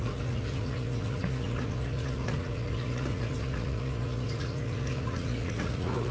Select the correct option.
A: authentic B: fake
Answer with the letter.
B